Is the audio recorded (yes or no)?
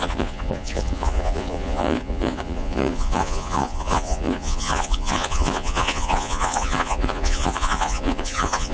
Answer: no